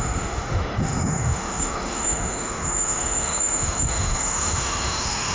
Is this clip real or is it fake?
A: fake